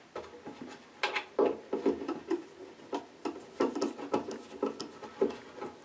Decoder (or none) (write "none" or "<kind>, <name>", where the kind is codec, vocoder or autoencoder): none